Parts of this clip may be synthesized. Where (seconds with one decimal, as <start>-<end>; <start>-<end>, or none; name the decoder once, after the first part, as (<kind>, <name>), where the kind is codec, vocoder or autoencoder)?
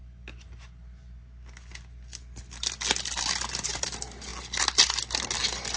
none